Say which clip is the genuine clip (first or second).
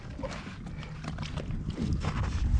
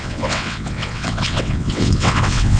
first